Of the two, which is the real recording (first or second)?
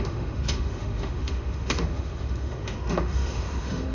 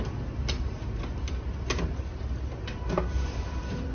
second